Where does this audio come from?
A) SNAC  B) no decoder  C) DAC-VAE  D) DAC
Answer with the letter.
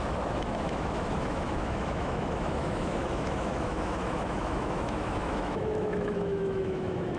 C